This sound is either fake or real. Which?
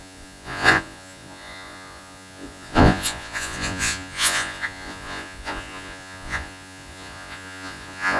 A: fake